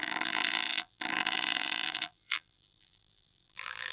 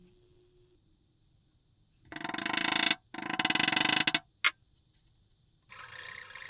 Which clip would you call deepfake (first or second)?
first